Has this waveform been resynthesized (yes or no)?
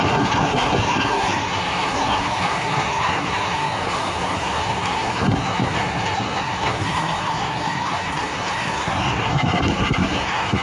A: yes